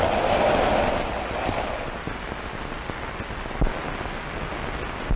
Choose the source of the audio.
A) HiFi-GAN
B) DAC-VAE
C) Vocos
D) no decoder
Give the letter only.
D